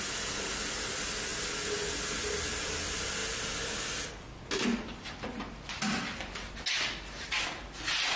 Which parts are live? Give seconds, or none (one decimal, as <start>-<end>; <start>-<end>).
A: 0.0-8.2